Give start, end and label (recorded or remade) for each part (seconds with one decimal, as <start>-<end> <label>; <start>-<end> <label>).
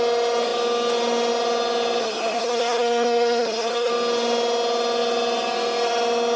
0.0-2.0 recorded; 2.0-3.9 remade; 3.9-6.4 recorded